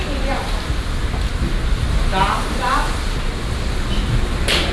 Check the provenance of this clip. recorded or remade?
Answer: recorded